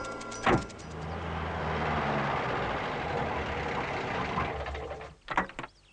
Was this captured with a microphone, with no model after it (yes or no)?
yes